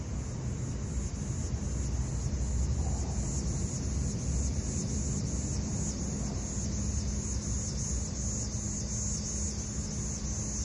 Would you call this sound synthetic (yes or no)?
no